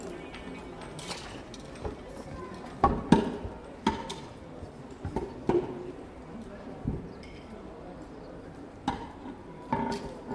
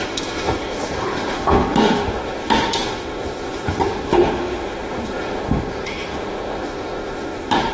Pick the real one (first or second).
first